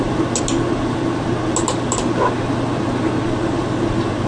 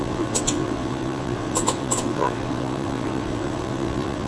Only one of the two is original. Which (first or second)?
first